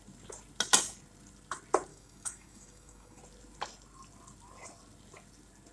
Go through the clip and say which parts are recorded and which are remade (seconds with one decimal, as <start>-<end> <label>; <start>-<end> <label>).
0.0-1.9 recorded; 1.9-3.2 remade; 3.2-5.7 recorded